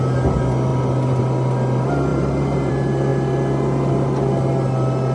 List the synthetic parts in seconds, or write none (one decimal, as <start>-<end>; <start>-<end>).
2.1-2.7